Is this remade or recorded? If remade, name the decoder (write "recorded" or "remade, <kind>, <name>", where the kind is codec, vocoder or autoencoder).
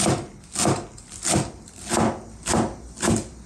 recorded